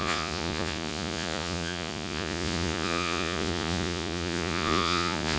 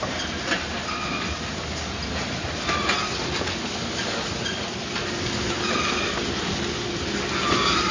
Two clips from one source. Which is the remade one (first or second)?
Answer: first